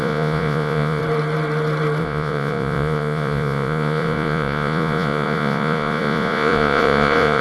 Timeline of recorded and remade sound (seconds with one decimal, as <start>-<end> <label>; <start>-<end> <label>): 0.0-1.0 remade; 1.0-2.0 recorded; 2.0-7.4 remade